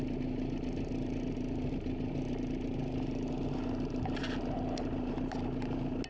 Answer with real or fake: real